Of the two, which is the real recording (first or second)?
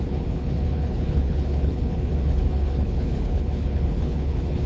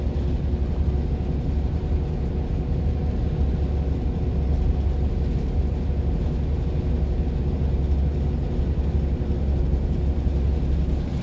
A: second